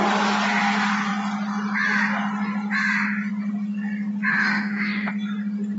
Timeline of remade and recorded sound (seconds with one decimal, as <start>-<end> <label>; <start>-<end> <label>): 0.0-4.3 recorded; 4.3-5.1 remade; 5.1-5.8 recorded